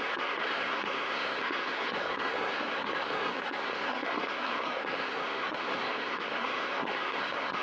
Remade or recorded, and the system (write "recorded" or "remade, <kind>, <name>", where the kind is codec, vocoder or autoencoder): remade, codec, SNAC